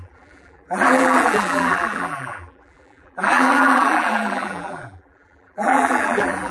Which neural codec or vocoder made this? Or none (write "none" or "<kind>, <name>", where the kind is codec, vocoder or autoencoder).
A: vocoder, BigVGAN v2